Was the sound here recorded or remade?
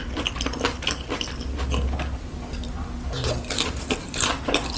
recorded